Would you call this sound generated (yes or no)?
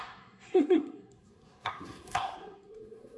yes